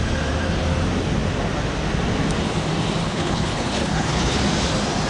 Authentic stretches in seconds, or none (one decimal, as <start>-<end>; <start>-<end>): 0.0-3.0; 4.4-5.1